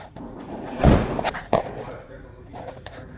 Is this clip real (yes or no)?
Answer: no